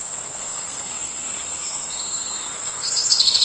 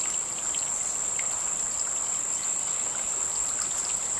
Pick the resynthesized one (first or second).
first